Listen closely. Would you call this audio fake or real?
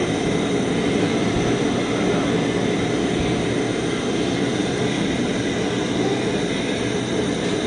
real